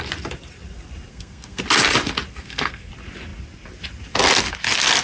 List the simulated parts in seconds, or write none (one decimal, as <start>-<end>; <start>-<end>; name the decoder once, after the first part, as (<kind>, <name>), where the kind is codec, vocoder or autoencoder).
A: 1.1-1.6 (codec, SNAC); 2.3-2.9